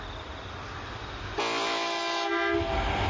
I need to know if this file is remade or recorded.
recorded